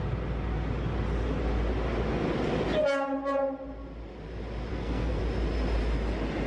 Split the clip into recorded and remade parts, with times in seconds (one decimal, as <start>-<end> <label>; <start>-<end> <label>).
0.0-4.7 recorded; 4.7-5.2 remade; 5.2-6.5 recorded